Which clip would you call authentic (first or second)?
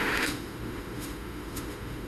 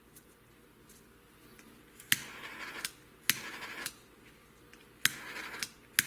second